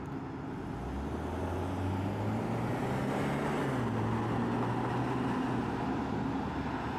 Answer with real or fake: real